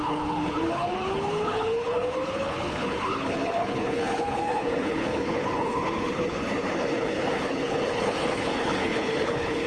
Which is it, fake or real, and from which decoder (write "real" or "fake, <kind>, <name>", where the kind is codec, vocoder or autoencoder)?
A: fake, codec, HILCodec